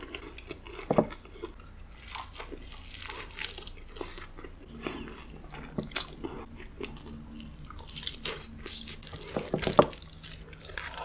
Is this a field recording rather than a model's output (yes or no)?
yes